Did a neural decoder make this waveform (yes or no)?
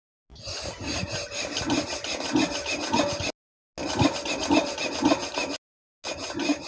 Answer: no